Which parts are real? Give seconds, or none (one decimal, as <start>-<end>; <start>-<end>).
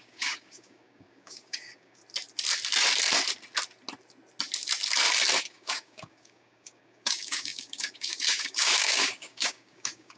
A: 2.0-5.4